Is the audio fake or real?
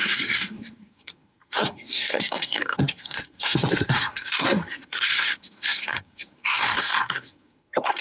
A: fake